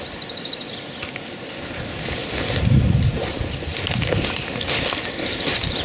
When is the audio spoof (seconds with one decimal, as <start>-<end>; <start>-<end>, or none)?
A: 0.0-2.2; 3.0-3.7; 5.3-5.8